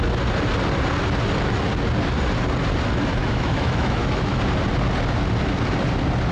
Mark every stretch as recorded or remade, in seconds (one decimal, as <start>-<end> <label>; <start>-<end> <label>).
0.0-3.2 recorded; 3.2-4.4 remade; 4.4-6.3 recorded